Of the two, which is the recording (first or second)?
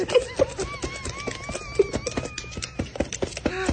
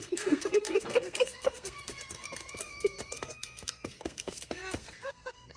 first